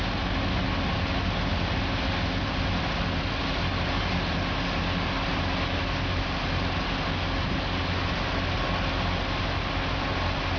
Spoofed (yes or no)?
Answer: no